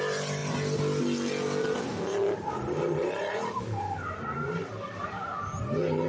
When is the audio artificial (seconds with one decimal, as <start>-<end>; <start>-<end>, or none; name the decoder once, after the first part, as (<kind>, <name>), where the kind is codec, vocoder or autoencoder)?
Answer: 1.9-5.6 (vocoder, BigVGAN v2)